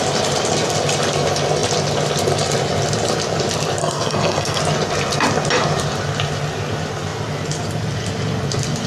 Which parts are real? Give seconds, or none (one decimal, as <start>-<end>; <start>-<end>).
0.0-3.8; 4.6-8.9